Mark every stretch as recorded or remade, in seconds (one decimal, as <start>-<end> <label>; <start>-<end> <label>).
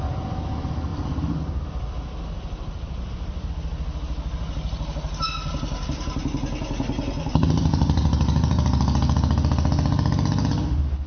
0.0-0.9 recorded; 0.9-3.5 remade; 3.5-11.1 recorded